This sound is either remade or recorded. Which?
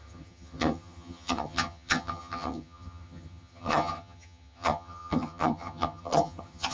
remade